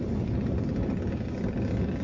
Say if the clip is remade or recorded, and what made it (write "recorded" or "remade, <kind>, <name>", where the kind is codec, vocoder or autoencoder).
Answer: recorded